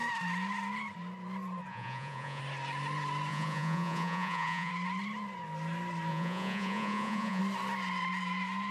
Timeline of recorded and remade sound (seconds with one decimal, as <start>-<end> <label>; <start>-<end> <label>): 0.0-1.7 recorded; 1.7-2.4 remade; 2.4-3.3 recorded; 3.3-4.7 remade; 4.7-6.1 recorded; 6.1-7.4 remade; 7.4-8.7 recorded